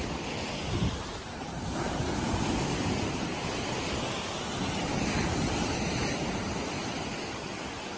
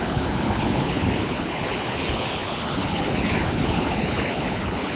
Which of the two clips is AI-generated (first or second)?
second